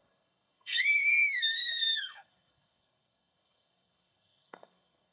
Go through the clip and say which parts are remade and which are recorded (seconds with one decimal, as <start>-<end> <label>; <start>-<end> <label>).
0.0-5.1 remade